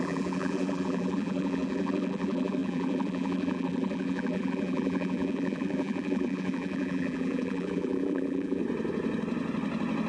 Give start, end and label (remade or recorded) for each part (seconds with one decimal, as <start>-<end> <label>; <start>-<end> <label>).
0.0-8.6 remade; 8.6-10.1 recorded

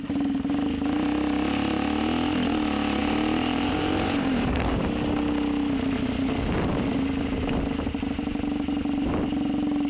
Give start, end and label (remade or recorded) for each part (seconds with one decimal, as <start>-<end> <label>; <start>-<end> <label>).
0.0-3.0 recorded; 3.0-4.8 remade; 4.8-9.9 recorded

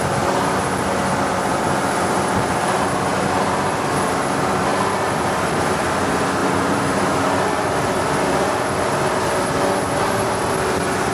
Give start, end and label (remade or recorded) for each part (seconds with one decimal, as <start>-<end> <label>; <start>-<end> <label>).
0.0-3.1 recorded; 3.1-4.2 remade; 4.2-4.7 recorded; 4.7-5.9 remade; 5.9-6.4 recorded; 6.4-8.9 remade; 8.9-11.1 recorded

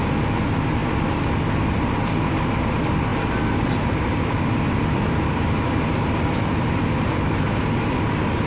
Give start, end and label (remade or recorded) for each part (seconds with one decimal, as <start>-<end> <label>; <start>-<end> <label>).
0.0-0.8 recorded; 0.8-2.3 remade; 2.3-3.1 recorded; 3.1-7.4 remade; 7.4-8.5 recorded

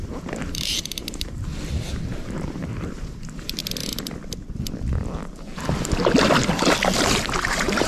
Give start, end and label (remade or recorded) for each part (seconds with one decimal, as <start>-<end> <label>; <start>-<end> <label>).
0.0-3.6 remade; 3.6-7.5 recorded; 7.5-7.9 remade

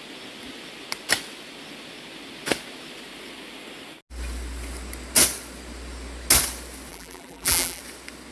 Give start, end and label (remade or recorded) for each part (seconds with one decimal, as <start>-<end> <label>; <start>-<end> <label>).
0.0-6.9 recorded; 6.9-7.8 remade; 7.8-8.3 recorded